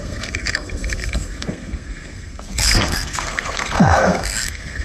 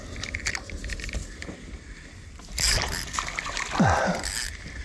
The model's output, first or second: first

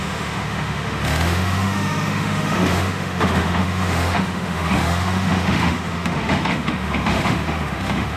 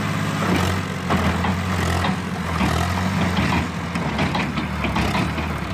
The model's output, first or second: first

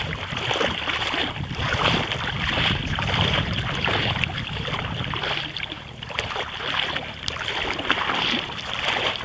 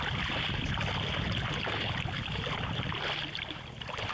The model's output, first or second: first